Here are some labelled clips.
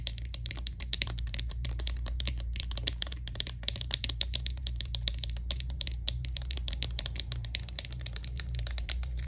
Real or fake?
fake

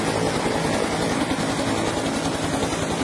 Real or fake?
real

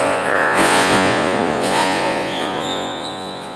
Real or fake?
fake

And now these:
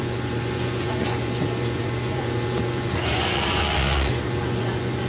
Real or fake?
fake